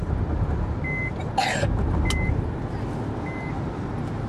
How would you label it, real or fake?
real